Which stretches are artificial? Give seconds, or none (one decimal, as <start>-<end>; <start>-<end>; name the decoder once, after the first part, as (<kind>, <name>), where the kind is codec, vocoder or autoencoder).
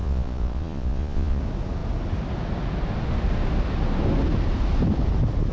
0.0-1.4 (vocoder, Vocos)